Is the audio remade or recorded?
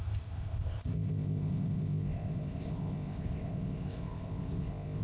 remade